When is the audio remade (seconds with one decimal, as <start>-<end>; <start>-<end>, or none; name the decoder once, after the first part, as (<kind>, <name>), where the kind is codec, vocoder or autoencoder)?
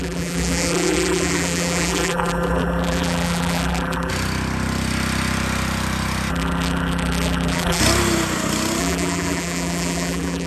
0.0-4.1 (vocoder, BigVGAN v2); 6.3-7.8; 8.8-10.5